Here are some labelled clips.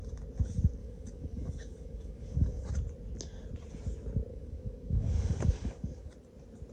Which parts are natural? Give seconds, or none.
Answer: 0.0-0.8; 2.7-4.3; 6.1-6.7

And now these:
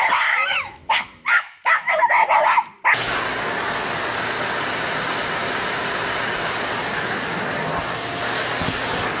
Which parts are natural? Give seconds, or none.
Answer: 0.0-0.4; 1.9-9.2